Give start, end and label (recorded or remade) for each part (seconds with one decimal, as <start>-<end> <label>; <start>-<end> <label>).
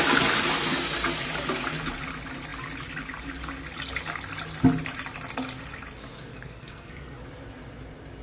0.0-6.3 recorded; 6.3-7.2 remade; 7.2-8.2 recorded